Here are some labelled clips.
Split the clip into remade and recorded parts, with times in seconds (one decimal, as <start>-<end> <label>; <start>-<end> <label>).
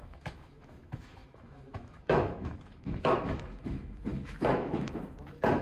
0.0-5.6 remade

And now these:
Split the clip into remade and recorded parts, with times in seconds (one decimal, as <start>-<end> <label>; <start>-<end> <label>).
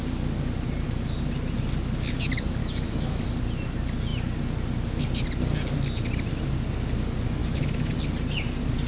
0.0-2.6 recorded; 2.6-3.2 remade; 3.2-7.4 recorded; 7.4-7.9 remade; 7.9-8.9 recorded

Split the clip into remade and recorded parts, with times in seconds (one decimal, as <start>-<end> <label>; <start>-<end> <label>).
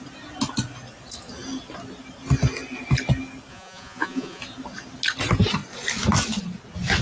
0.0-3.5 recorded; 3.5-4.4 remade; 4.4-7.0 recorded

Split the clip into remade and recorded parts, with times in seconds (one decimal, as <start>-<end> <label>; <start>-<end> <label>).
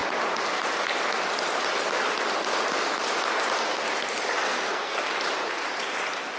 0.0-4.4 recorded; 4.4-5.0 remade; 5.0-6.4 recorded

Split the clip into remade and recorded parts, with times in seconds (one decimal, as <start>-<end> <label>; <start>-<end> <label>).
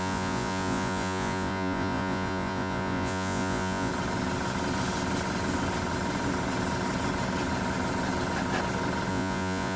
0.0-3.9 remade; 3.9-9.1 recorded; 9.1-9.8 remade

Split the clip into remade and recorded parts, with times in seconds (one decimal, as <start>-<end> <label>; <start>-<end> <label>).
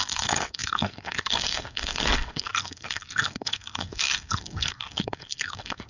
0.0-5.9 remade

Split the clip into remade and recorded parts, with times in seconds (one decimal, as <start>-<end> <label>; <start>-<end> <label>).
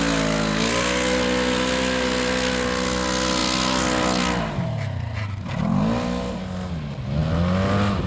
0.0-8.1 recorded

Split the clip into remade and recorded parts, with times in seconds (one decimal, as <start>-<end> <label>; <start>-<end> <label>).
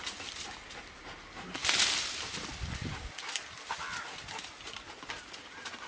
0.0-5.9 recorded